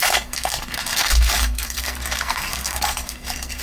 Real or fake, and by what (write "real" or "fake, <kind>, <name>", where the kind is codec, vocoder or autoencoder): fake, codec, SNAC